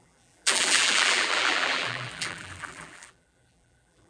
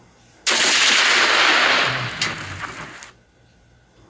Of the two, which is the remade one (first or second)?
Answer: first